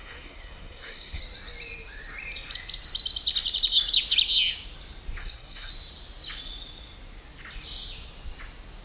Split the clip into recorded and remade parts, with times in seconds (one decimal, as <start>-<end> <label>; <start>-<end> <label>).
0.0-1.2 remade; 1.2-5.2 recorded; 5.2-5.7 remade; 5.7-8.8 recorded